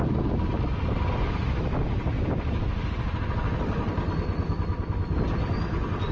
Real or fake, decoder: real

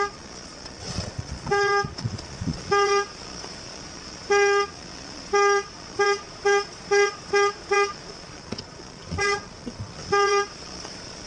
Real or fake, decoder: fake, vocoder, Vocos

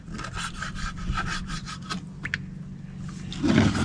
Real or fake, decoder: real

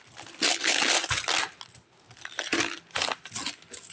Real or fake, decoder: real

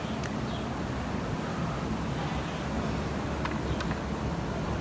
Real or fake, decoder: real